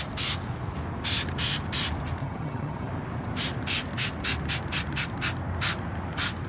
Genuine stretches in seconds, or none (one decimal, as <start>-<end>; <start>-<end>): 0.0-2.2; 2.9-6.5